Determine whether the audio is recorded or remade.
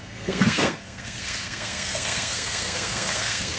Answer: remade